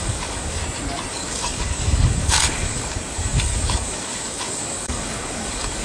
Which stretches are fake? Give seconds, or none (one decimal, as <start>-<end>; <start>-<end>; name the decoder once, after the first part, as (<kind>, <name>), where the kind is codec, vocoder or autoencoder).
0.0-0.6 (codec, DAC); 1.1-5.8